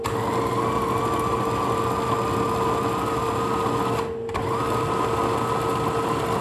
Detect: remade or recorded recorded